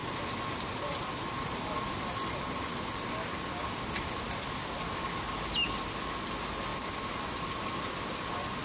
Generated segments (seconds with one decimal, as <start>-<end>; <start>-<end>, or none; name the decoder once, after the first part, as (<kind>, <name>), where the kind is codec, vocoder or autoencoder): none

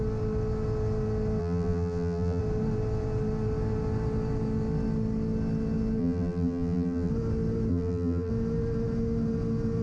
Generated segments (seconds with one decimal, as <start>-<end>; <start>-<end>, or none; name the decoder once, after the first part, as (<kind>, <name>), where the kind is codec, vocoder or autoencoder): 1.4-2.4 (vocoder, BigVGAN v2); 6.0-7.1; 7.7-8.3

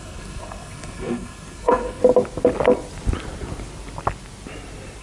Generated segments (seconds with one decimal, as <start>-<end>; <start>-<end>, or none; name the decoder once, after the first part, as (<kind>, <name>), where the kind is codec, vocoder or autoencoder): 0.0-2.0 (codec, SNAC)